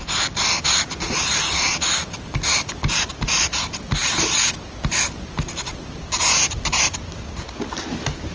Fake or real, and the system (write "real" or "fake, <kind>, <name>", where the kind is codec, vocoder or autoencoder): real